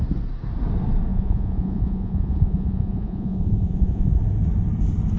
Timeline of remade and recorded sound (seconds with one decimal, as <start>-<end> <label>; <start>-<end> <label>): 0.0-1.1 recorded; 1.1-4.2 remade; 4.2-5.2 recorded